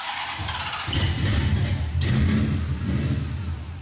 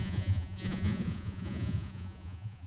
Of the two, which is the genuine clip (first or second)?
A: first